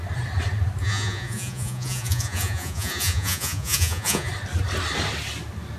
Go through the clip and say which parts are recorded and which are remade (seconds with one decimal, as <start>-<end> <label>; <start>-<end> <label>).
0.0-0.8 recorded; 0.8-4.3 remade; 4.3-5.8 recorded